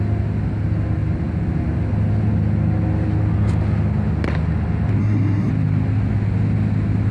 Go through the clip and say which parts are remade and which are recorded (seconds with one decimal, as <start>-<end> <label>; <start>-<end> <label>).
0.0-5.0 recorded; 5.0-5.5 remade; 5.5-7.1 recorded